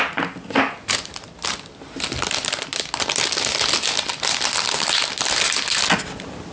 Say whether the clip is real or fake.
real